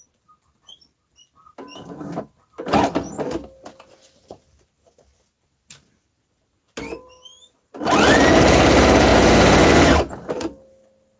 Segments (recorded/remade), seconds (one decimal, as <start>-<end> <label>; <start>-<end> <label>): 0.0-9.1 recorded; 9.1-10.1 remade; 10.1-11.2 recorded